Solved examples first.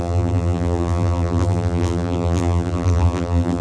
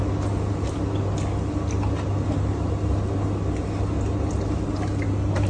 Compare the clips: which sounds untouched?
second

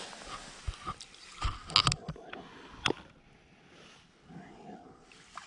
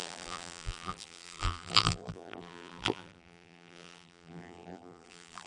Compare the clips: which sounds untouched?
first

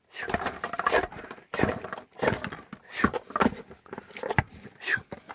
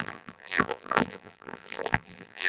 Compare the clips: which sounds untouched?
first